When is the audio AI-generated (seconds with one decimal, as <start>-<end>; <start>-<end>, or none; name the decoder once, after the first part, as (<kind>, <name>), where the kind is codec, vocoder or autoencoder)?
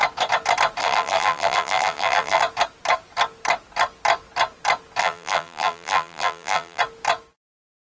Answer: 0.8-2.4 (vocoder, BigVGAN v2); 5.0-6.8